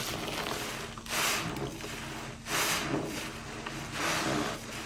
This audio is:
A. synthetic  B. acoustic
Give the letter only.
B